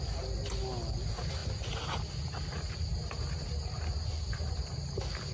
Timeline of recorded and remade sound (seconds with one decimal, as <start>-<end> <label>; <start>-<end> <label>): 0.0-5.3 recorded